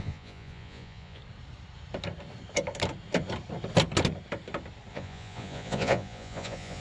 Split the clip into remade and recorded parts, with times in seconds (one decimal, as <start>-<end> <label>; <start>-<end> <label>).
0.0-1.2 remade; 1.2-4.9 recorded; 4.9-6.8 remade